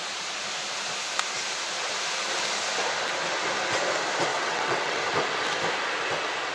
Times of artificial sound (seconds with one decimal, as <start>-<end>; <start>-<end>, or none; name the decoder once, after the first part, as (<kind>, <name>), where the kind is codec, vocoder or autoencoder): 4.3-5.0 (vocoder, WaveNeXt)